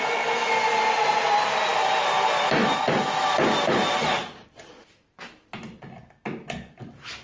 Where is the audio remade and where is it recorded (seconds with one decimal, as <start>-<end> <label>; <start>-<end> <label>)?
0.0-7.2 recorded